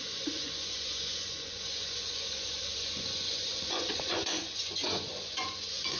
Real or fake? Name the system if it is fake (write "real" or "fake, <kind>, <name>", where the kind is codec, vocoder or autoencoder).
fake, vocoder, Vocos